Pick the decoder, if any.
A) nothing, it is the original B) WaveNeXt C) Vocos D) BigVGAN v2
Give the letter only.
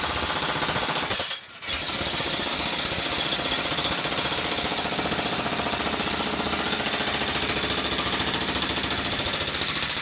A